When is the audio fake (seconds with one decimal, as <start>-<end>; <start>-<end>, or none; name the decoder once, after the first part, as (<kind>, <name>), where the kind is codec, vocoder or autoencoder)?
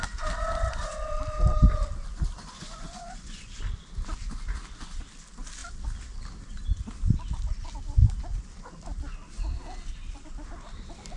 2.4-3.5 (vocoder, Vocos)